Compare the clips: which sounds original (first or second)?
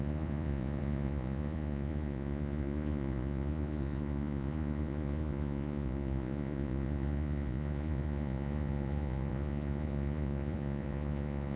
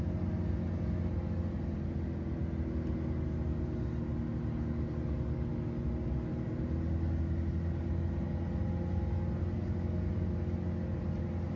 second